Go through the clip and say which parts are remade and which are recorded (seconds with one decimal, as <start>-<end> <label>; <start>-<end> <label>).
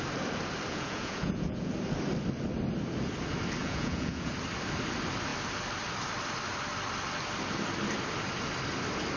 0.0-0.7 recorded; 0.7-1.7 remade; 1.7-3.6 recorded; 3.6-4.3 remade; 4.3-9.2 recorded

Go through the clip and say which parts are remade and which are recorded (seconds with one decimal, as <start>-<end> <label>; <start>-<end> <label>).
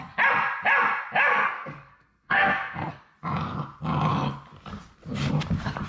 0.0-1.3 recorded; 1.3-2.9 remade; 2.9-5.9 recorded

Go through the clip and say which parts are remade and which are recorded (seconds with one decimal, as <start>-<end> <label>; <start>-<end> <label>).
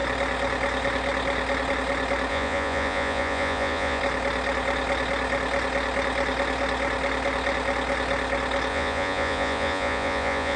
0.0-2.3 recorded; 2.3-4.0 remade; 4.0-8.7 recorded; 8.7-10.6 remade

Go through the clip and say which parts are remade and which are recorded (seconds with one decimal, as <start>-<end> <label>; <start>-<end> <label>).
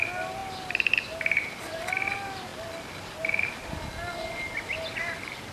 0.0-5.5 recorded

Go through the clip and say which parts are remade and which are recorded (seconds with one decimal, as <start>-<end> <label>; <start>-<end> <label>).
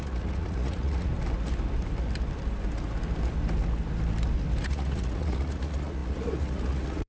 0.0-1.1 remade; 1.1-4.6 recorded; 4.6-7.1 remade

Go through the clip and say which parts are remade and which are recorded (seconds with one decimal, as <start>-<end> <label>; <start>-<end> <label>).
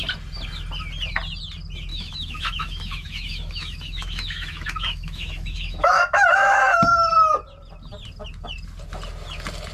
0.0-1.9 recorded; 1.9-6.6 remade; 6.6-9.7 recorded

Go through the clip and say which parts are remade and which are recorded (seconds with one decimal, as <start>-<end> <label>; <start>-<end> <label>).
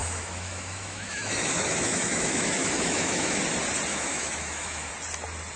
0.0-3.4 remade; 3.4-3.9 recorded; 3.9-4.9 remade; 4.9-5.6 recorded